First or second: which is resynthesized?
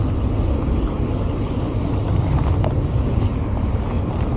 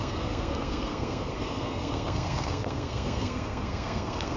second